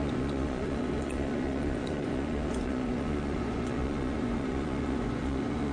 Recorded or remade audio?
remade